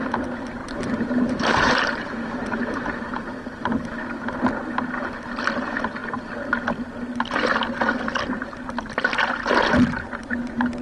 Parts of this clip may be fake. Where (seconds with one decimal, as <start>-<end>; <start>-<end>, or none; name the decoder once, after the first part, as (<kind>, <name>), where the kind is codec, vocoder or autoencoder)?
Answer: 0.6-4.0 (vocoder, BigVGAN v2)